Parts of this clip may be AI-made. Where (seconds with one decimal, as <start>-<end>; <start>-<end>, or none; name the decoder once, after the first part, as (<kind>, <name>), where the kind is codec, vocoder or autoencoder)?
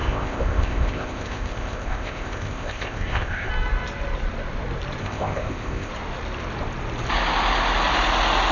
0.0-3.5 (codec, ZipCodec); 5.0-5.9